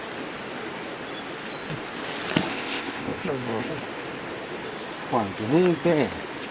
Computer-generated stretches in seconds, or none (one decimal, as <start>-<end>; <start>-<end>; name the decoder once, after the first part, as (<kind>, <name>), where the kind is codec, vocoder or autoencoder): 2.5-3.7 (codec, ZipCodec)